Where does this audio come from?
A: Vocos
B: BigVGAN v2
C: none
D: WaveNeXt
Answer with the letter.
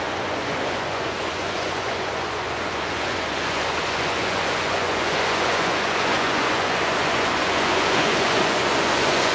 A